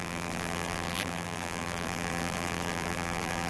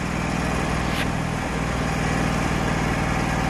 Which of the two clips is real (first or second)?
second